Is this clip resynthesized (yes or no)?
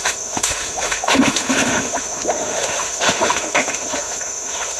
yes